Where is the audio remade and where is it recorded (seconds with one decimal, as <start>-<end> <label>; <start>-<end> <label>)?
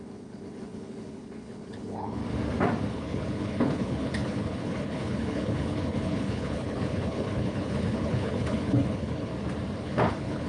0.0-2.2 remade; 2.2-2.9 recorded; 2.9-9.3 remade; 9.3-9.8 recorded; 9.8-10.5 remade